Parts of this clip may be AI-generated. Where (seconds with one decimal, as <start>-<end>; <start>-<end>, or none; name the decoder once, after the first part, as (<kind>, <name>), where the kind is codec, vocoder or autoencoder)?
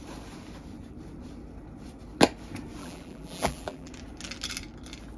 2.8-3.9 (vocoder, BigVGAN v2)